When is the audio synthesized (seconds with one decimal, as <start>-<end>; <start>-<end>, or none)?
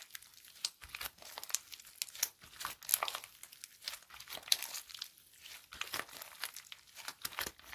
none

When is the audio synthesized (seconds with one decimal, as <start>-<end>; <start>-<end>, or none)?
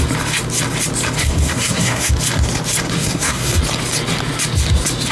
1.2-2.1; 3.0-3.6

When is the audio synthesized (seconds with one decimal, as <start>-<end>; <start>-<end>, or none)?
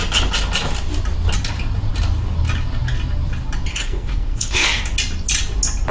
3.7-4.8